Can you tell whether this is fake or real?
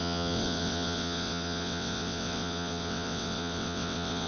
fake